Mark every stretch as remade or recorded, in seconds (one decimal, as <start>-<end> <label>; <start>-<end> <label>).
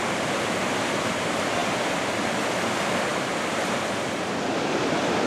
0.0-5.3 recorded